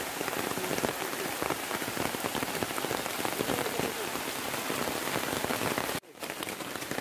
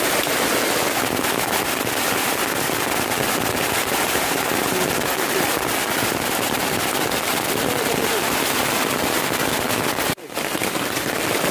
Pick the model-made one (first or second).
first